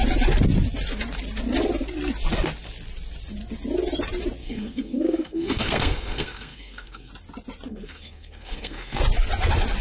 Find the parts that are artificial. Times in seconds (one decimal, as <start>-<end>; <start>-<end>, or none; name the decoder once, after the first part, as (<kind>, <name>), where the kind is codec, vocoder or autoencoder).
4.4-7.1 (codec, SNAC); 7.7-9.0